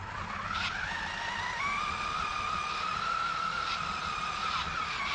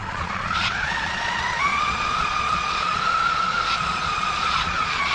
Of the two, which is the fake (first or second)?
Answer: second